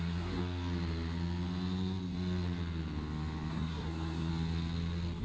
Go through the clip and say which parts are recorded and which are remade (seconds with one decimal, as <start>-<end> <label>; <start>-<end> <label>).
0.0-0.4 remade; 0.4-3.5 recorded; 3.5-4.3 remade; 4.3-5.2 recorded